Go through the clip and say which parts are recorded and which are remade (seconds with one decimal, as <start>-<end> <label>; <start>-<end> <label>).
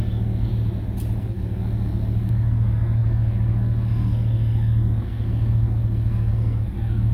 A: 0.0-0.5 remade; 0.5-1.2 recorded; 1.2-7.1 remade